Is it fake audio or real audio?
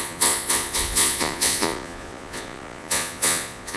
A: fake